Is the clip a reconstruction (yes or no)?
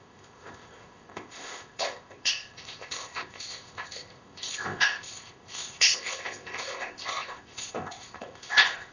yes